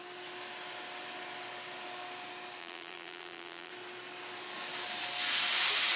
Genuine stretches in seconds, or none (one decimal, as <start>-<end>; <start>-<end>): 0.0-2.6; 3.7-6.0